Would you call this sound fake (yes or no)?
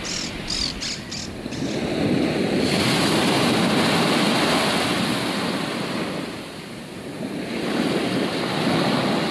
no